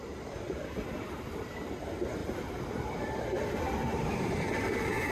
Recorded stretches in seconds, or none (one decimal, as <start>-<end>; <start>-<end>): 2.2-2.7